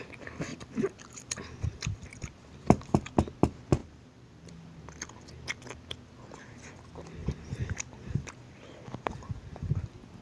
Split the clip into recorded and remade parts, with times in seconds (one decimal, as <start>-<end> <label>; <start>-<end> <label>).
0.0-0.5 recorded; 0.5-3.1 remade; 3.1-3.8 recorded; 3.8-4.5 remade; 4.5-7.2 recorded; 7.2-9.7 remade; 9.7-10.2 recorded